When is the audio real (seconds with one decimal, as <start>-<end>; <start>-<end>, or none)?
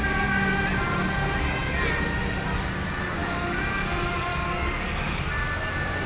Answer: 0.0-4.3; 5.2-6.1